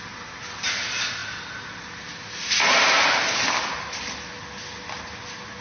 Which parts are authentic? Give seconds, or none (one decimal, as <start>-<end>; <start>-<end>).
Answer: 0.0-5.6